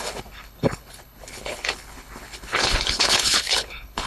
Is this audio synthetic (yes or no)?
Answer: yes